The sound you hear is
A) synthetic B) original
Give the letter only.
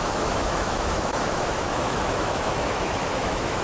A